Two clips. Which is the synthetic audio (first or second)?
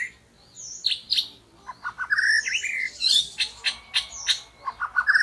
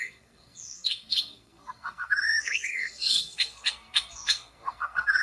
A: second